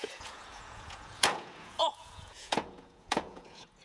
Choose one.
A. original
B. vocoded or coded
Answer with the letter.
B